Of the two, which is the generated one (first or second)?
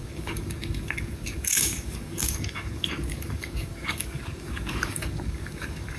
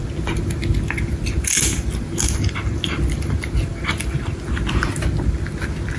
first